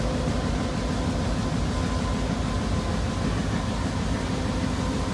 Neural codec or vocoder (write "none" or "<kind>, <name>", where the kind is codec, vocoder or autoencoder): none